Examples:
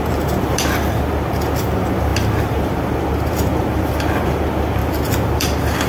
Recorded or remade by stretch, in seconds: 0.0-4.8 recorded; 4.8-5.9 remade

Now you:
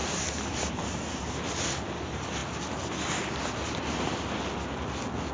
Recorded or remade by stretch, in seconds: 0.0-1.3 remade; 1.3-5.3 recorded

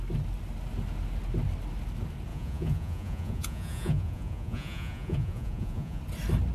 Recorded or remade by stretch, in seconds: 0.0-2.3 recorded; 2.3-6.0 remade; 6.0-6.5 recorded

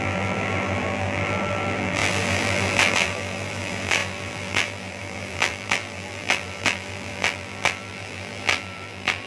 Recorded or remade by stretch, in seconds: 0.0-9.3 remade